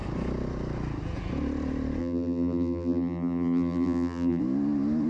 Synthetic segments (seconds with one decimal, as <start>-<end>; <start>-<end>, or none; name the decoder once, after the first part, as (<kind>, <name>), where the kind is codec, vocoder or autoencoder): 2.0-4.4 (vocoder, BigVGAN v2)